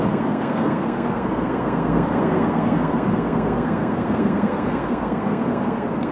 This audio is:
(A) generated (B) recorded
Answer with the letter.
A